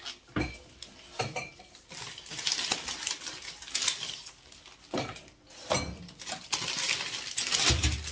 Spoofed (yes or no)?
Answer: no